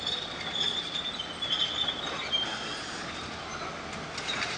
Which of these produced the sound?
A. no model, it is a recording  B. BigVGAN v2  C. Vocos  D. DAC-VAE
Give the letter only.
A